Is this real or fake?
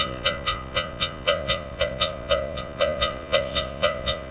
fake